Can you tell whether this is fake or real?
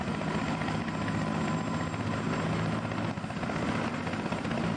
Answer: real